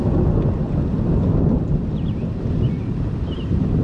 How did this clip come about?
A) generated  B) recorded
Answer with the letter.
B